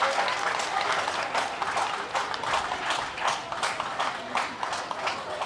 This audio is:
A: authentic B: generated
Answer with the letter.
A